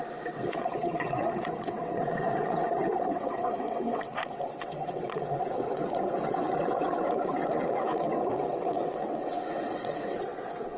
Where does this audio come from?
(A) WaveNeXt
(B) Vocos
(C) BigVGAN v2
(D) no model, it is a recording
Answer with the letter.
A